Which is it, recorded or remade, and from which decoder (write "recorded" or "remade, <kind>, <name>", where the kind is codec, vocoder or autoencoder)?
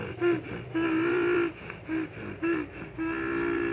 remade, vocoder, BigVGAN v2